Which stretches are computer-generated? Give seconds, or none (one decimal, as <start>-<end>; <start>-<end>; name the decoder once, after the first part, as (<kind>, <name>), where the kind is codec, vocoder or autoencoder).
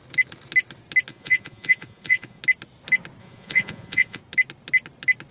1.1-2.4 (vocoder, Vocos); 3.2-4.2